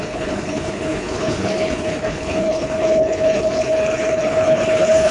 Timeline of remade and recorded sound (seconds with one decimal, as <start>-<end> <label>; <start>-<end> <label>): 0.0-5.1 remade